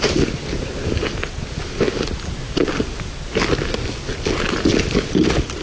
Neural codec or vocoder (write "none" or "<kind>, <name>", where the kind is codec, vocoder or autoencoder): none